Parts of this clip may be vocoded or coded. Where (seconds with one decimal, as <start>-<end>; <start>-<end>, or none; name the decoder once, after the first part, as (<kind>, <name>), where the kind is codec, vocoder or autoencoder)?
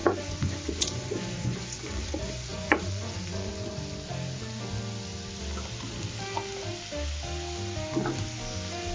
0.0-3.5 (vocoder, Vocos)